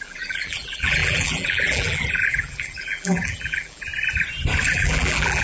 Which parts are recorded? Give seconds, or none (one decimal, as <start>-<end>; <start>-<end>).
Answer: 3.9-4.7